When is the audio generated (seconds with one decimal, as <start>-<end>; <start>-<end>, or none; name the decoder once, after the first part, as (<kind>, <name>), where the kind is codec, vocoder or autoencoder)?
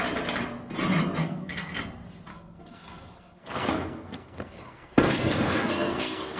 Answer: 1.2-1.8 (codec, SNAC); 2.3-6.4